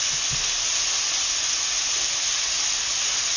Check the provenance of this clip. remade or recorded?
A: recorded